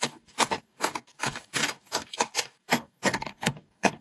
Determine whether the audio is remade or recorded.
remade